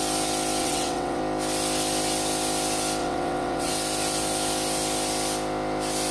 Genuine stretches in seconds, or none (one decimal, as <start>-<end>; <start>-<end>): 0.0-0.6; 1.2-3.0; 3.7-6.1